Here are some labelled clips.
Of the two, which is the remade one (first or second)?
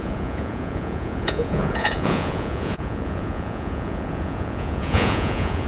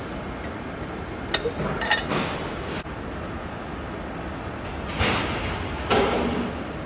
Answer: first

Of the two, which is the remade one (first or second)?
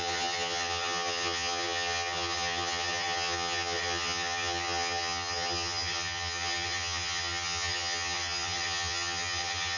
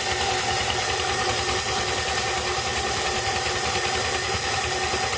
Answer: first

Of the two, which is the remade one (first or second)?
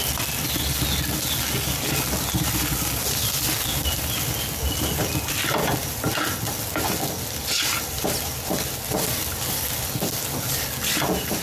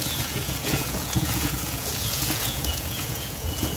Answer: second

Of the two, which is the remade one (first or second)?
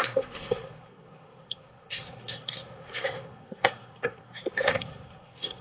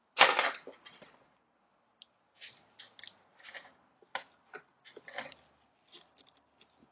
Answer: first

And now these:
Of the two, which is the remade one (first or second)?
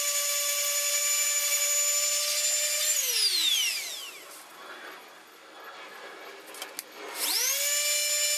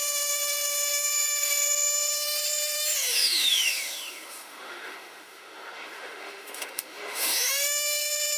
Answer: second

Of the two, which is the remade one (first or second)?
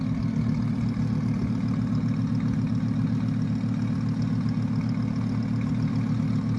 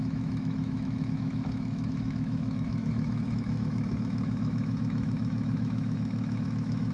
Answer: second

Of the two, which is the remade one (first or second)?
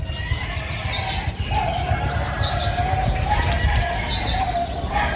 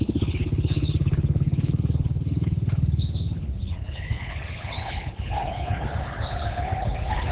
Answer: second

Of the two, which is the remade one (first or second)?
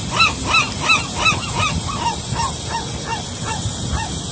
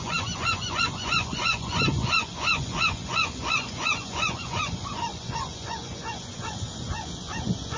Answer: second